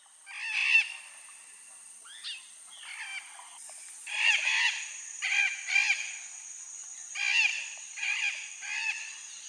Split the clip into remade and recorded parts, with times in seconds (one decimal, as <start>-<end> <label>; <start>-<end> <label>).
0.0-0.6 recorded; 0.6-1.1 remade; 1.1-3.1 recorded; 3.1-5.4 remade; 5.4-7.5 recorded; 7.5-8.9 remade; 8.9-9.5 recorded